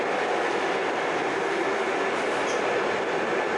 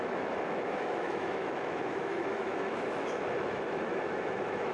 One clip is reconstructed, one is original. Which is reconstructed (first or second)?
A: second